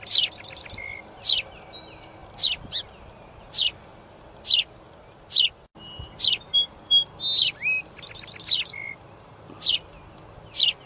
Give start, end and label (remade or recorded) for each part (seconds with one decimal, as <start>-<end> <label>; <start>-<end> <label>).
0.0-10.9 recorded